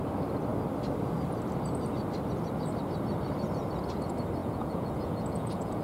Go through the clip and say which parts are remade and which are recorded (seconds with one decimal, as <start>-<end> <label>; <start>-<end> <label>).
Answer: 0.0-4.4 recorded; 4.4-5.8 remade